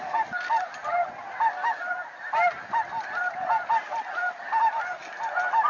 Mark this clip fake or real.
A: real